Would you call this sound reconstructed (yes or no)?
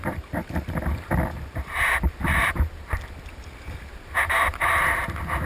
no